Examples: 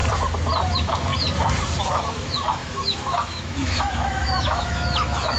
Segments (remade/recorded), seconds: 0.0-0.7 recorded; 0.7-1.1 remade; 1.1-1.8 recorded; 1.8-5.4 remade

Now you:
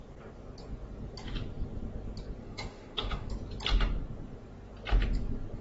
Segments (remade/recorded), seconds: 0.0-2.4 recorded; 2.4-3.3 remade; 3.3-5.6 recorded

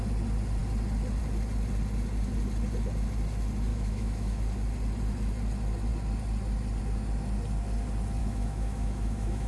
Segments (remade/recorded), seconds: 0.0-3.7 recorded; 3.7-4.4 remade; 4.4-8.2 recorded; 8.2-9.5 remade

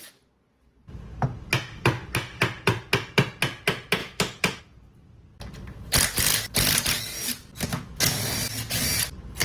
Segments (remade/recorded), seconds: 0.0-4.0 recorded; 4.0-4.6 remade; 4.6-7.7 recorded; 7.7-8.2 remade; 8.2-9.4 recorded

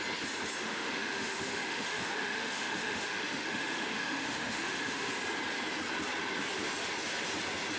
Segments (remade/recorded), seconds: 0.0-0.6 recorded; 0.6-5.1 remade; 5.1-7.8 recorded

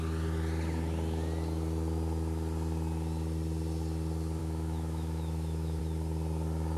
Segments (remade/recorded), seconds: 0.0-4.4 recorded; 4.4-5.8 remade; 5.8-6.8 recorded

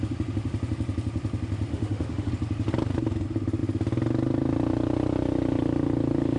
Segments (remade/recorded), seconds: 0.0-1.7 recorded; 1.7-2.3 remade; 2.3-6.4 recorded

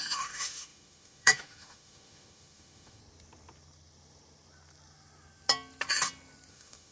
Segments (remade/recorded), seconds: 0.0-3.0 remade; 3.0-6.5 recorded; 6.5-6.9 remade